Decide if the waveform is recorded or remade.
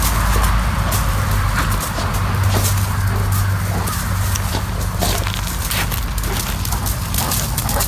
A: recorded